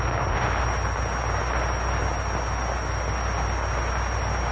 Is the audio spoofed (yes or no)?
no